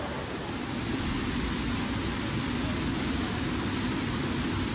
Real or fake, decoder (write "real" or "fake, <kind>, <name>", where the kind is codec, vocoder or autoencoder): real